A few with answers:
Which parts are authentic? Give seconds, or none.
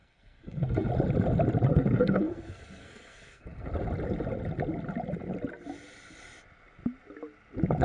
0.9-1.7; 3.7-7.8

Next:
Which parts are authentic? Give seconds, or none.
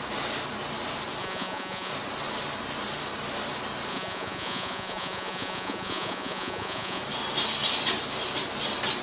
0.0-1.2; 1.9-3.9; 7.0-9.0